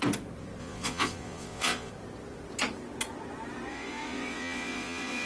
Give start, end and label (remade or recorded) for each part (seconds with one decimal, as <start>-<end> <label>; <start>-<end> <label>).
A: 0.0-0.6 recorded; 0.6-1.9 remade; 1.9-3.7 recorded; 3.7-5.3 remade